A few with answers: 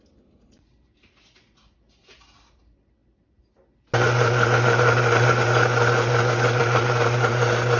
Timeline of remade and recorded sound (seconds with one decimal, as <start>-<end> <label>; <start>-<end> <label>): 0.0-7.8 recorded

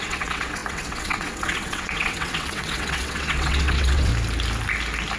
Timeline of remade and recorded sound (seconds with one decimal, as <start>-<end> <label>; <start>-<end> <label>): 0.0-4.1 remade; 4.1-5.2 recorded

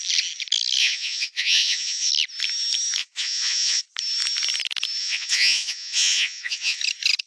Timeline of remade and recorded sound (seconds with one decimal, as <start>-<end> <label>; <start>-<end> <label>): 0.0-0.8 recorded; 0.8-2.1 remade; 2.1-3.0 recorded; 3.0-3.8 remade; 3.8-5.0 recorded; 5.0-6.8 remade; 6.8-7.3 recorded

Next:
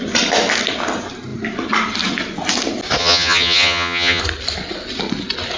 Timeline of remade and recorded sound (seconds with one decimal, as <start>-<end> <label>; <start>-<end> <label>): 0.0-3.0 recorded; 3.0-4.2 remade; 4.2-5.6 recorded